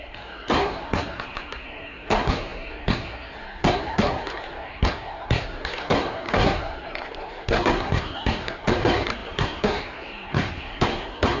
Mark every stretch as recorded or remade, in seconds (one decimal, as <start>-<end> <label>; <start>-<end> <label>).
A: 0.0-11.4 remade